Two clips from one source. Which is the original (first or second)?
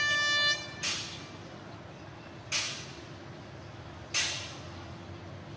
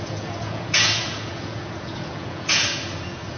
first